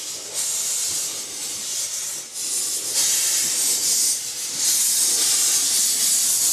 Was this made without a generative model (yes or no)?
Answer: yes